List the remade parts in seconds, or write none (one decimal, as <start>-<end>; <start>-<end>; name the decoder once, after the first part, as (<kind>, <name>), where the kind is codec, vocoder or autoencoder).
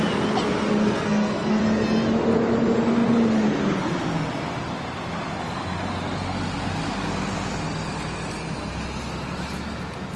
0.7-1.6 (codec, SNAC)